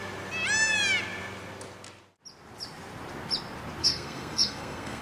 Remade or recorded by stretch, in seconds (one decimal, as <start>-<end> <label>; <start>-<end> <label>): 0.0-3.8 recorded; 3.8-5.0 remade